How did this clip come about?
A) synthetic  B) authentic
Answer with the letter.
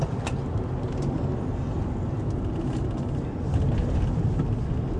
B